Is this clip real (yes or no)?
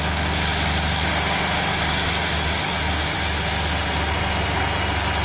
yes